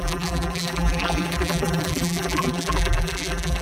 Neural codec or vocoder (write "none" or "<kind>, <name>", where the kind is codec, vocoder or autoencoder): vocoder, BigVGAN v2